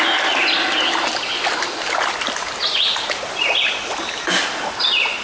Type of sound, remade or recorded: recorded